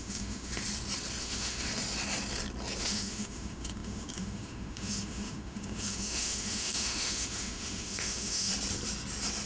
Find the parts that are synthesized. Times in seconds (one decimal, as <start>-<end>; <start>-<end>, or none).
0.0-0.5; 1.2-1.7; 2.8-8.5